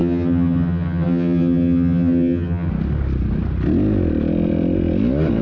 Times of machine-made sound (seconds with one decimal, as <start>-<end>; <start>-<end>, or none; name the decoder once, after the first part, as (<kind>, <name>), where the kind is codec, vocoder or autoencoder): 0.0-2.7 (vocoder, HiFi-GAN)